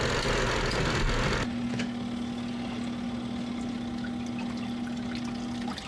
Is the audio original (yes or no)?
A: yes